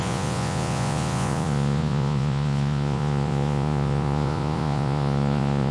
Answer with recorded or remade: remade